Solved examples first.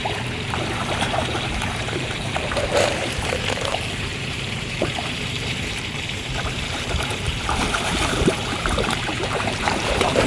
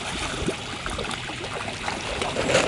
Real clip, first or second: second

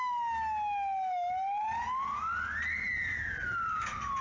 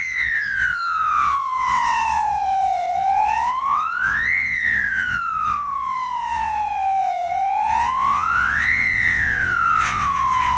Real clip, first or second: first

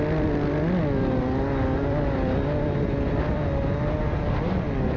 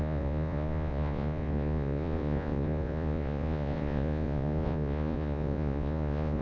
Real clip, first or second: first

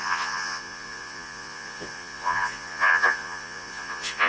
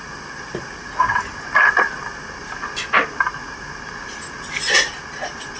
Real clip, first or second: second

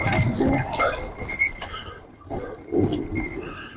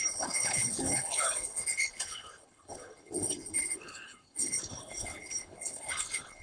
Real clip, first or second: first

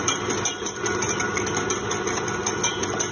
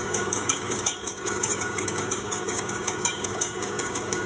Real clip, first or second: first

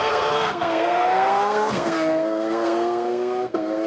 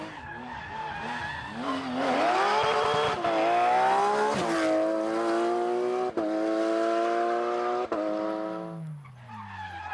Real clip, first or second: second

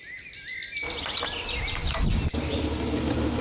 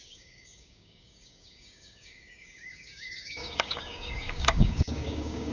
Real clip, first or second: first